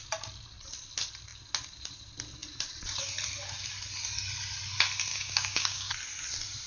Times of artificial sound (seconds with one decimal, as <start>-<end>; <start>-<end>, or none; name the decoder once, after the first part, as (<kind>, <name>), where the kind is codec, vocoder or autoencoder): 5.1-5.9 (codec, DAC)